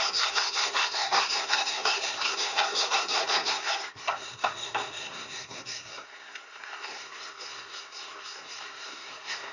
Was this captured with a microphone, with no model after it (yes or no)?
no